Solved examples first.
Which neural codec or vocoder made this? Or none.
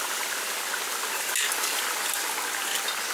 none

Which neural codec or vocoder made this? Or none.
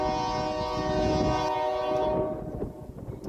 none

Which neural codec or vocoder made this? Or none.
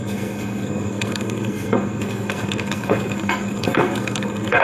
codec, SNAC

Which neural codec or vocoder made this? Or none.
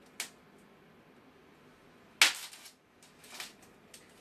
none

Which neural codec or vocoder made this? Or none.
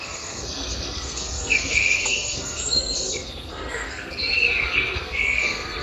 codec, SNAC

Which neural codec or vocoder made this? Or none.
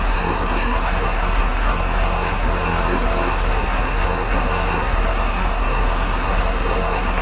codec, SNAC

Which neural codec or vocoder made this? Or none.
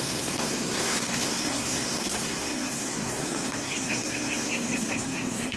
codec, SNAC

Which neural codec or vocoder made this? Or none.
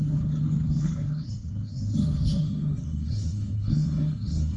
codec, SNAC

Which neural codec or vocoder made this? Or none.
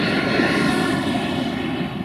none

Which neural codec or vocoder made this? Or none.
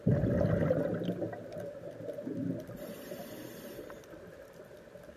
none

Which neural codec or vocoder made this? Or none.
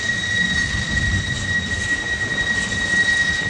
none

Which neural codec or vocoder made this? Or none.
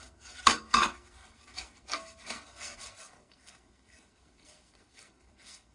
codec, SNAC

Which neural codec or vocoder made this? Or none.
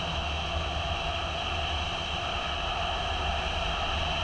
none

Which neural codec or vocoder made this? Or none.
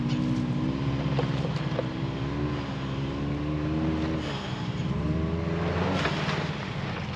none